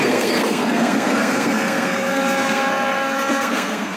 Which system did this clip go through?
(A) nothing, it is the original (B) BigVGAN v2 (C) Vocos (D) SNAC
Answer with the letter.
D